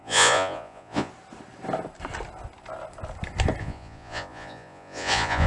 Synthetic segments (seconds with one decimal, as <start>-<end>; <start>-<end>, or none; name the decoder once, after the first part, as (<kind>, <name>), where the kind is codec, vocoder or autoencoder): 0.0-1.1 (vocoder, Vocos); 3.6-5.5